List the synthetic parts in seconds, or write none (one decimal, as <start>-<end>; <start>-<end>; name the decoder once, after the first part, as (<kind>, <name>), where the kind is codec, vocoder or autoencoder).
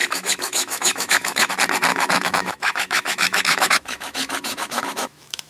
0.0-1.5 (autoencoder, DAC-VAE); 1.9-5.5